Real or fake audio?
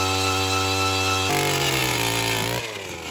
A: real